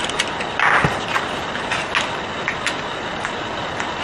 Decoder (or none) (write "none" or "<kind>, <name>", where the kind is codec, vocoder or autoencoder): none